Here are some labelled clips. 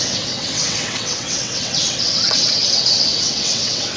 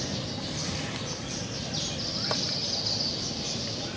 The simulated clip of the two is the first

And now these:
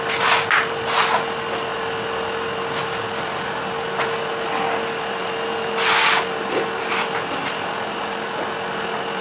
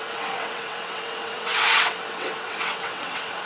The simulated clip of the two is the second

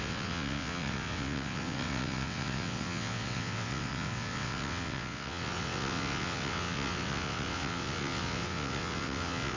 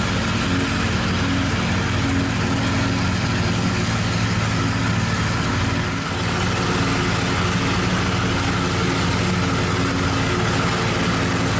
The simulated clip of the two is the first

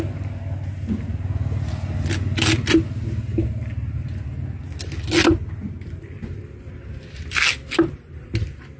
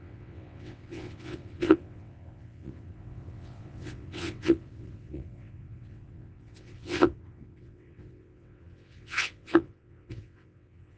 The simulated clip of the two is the second